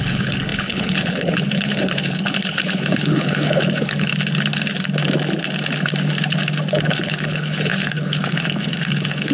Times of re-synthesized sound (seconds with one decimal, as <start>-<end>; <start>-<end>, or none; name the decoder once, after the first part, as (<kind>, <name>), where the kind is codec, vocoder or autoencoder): 0.0-4.1 (codec, HILCodec); 6.7-9.3